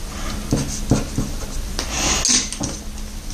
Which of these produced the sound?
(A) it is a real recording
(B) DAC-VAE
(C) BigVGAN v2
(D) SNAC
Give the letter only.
A